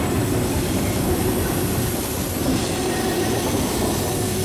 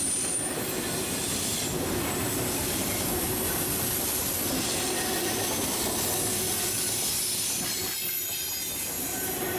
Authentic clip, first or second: second